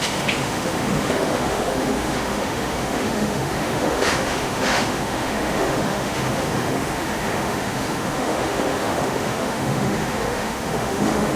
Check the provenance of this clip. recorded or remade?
remade